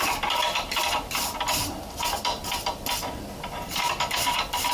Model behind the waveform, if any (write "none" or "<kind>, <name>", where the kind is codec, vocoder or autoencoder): vocoder, BigVGAN v2